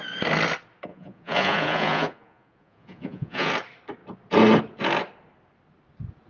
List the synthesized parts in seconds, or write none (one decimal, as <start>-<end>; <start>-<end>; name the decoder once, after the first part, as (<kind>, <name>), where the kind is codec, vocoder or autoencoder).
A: 0.9-3.5 (vocoder, Vocos)